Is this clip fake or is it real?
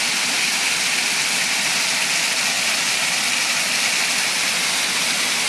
real